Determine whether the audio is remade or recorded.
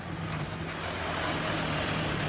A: recorded